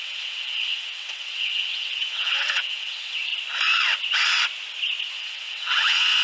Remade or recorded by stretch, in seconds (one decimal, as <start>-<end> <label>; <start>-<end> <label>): 0.0-3.3 remade; 3.3-5.1 recorded; 5.1-6.2 remade